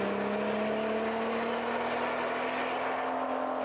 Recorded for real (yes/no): yes